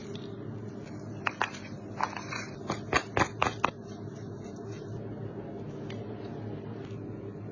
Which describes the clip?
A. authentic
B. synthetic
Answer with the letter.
A